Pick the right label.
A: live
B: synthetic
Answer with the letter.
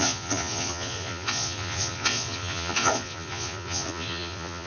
B